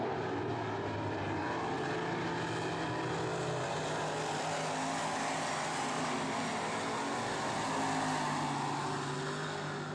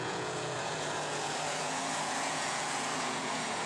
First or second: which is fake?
second